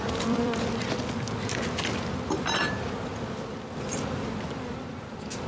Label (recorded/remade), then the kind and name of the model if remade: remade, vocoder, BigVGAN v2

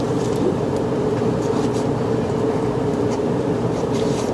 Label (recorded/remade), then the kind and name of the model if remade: remade, vocoder, BigVGAN v2